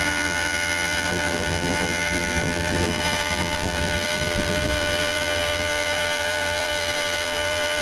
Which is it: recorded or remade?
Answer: remade